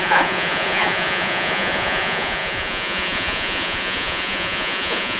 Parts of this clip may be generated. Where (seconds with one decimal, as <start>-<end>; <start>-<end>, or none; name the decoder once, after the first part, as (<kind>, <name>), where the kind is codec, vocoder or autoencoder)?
0.0-5.2 (vocoder, Vocos)